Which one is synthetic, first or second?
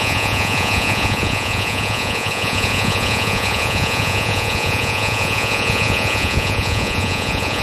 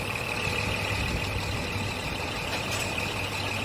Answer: first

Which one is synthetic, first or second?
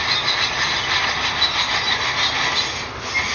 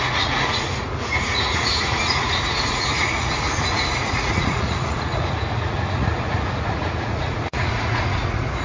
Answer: second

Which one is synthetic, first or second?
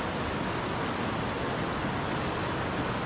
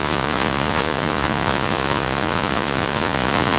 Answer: second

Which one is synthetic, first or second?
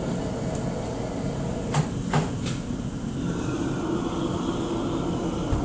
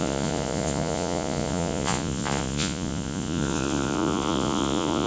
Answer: second